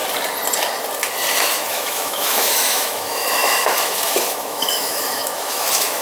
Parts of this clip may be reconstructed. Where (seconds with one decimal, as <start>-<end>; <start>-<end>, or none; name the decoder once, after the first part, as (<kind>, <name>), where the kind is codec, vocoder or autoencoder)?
1.4-6.0 (autoencoder, DAC-VAE)